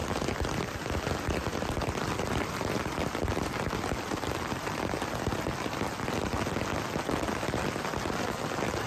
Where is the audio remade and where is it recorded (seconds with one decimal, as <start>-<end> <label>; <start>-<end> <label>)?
0.0-8.9 recorded